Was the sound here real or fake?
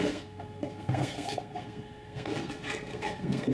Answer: fake